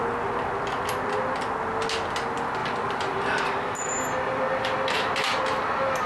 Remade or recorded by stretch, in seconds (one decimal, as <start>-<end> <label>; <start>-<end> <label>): 0.0-2.6 recorded; 2.6-3.4 remade; 3.4-6.1 recorded